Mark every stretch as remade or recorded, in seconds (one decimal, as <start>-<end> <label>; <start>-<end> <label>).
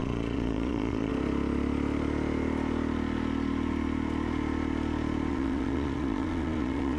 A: 0.0-1.1 remade; 1.1-5.3 recorded; 5.3-7.0 remade